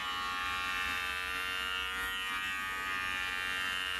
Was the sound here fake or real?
real